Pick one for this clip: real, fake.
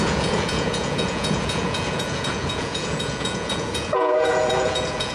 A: fake